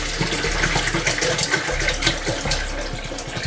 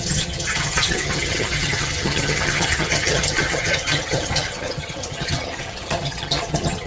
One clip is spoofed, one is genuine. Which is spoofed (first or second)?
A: second